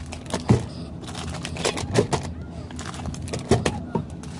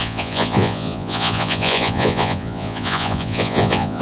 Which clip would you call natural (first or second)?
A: first